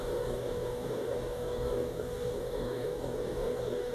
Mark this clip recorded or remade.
remade